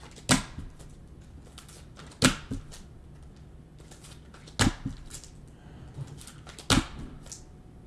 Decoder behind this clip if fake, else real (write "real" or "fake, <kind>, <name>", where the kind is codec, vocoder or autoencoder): real